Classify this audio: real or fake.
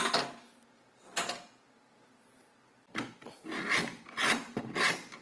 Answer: real